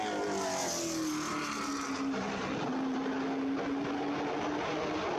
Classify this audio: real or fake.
real